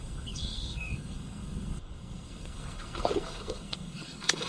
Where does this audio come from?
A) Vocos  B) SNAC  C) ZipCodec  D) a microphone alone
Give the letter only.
B